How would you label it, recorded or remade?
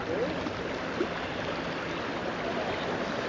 recorded